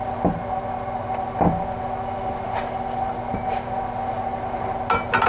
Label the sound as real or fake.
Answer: real